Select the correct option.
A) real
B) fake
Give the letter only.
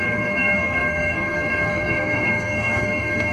B